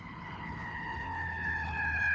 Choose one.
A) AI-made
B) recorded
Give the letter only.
A